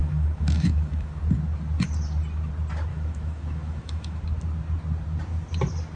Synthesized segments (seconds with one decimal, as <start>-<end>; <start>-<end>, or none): 0.0-1.2; 2.9-4.2